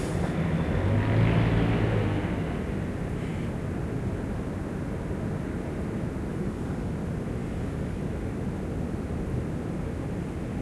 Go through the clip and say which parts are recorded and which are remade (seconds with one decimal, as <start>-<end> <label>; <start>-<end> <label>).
0.0-6.3 recorded; 6.3-6.9 remade; 6.9-7.4 recorded; 7.4-8.0 remade; 8.0-10.6 recorded